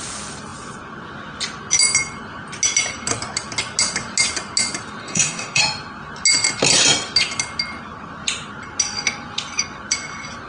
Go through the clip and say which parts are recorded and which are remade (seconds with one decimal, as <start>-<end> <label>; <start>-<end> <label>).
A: 0.0-5.0 recorded; 5.0-5.6 remade; 5.6-10.5 recorded